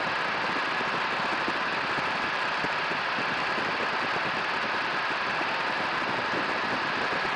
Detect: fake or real real